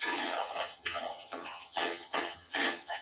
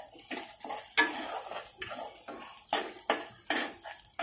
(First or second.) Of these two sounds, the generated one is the first